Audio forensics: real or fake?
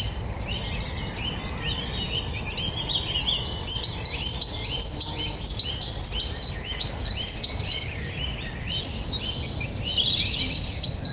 real